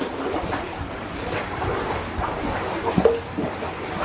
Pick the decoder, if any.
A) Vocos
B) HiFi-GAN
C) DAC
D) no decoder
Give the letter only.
D